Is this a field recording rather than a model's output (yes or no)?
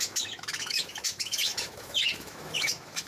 no